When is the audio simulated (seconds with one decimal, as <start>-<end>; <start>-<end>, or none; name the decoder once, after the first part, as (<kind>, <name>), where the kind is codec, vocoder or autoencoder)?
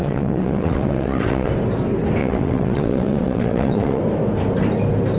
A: 0.0-1.5 (vocoder, WaveNeXt); 2.2-4.0